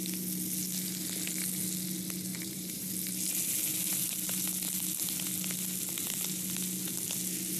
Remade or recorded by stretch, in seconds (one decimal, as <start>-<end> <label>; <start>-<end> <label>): 0.0-2.3 recorded; 2.3-2.9 remade; 2.9-7.6 recorded

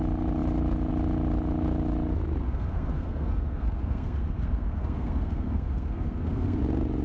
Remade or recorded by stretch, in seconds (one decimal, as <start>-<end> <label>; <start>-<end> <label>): 0.0-2.4 recorded; 2.4-6.6 remade; 6.6-7.0 recorded

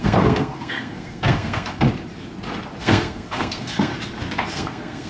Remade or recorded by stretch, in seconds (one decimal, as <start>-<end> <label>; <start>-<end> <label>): 0.0-1.9 remade; 1.9-2.8 recorded; 2.8-3.9 remade; 3.9-4.5 recorded; 4.5-5.1 remade

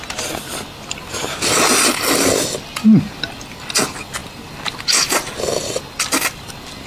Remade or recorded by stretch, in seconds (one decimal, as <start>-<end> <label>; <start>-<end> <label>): 0.0-1.0 recorded; 1.0-1.7 remade; 1.7-6.9 recorded

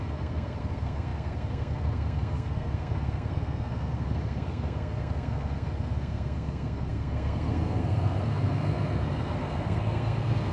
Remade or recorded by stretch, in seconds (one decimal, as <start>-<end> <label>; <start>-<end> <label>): 0.0-10.5 remade